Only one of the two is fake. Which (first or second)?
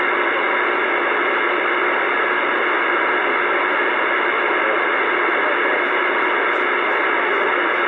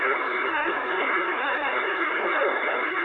second